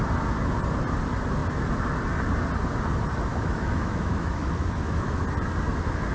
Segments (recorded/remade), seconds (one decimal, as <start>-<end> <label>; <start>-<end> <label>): 0.0-3.3 recorded; 3.3-5.2 remade; 5.2-6.1 recorded